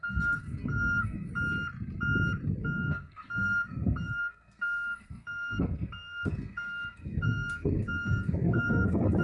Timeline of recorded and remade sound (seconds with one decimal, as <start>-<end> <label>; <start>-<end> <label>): 0.0-1.3 remade; 1.3-2.6 recorded; 2.6-9.2 remade